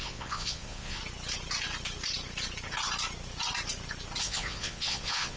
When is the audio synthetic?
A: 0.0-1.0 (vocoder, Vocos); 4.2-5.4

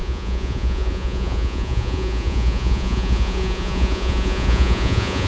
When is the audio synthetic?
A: 0.0-5.3 (vocoder, Vocos)

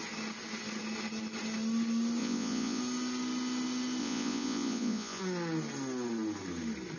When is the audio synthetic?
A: 2.2-2.8 (vocoder, Vocos); 4.0-5.2